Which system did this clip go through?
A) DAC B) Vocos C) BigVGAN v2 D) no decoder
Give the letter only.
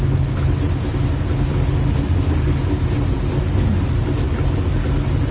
D